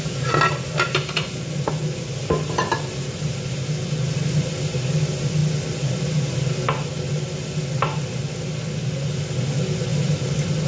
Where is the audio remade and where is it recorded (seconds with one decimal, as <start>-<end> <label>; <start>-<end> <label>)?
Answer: 0.0-10.7 recorded